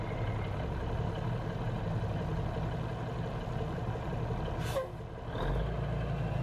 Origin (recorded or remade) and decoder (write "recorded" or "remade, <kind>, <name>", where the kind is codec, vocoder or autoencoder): recorded